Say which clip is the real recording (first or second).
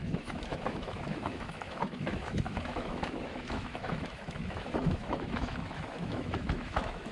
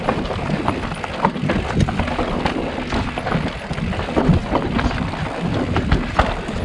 second